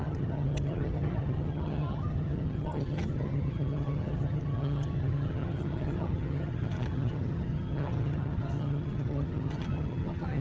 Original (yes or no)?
no